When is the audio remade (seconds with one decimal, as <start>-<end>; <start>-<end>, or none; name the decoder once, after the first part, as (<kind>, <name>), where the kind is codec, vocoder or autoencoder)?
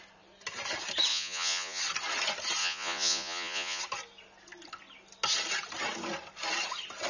1.1-1.8 (vocoder, Vocos); 2.6-3.8